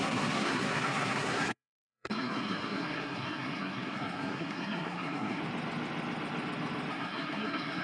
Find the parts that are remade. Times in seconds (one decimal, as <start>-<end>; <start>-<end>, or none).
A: 0.0-5.4; 6.9-7.8